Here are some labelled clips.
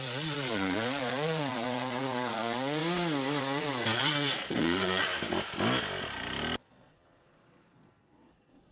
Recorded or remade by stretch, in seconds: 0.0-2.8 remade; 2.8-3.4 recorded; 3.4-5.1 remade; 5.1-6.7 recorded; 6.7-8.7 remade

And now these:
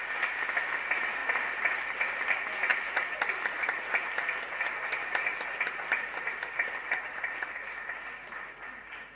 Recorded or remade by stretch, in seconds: 0.0-1.2 recorded; 1.2-2.3 remade; 2.3-9.2 recorded